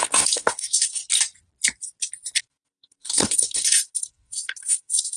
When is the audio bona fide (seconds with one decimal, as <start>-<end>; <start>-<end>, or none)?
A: 1.0-2.4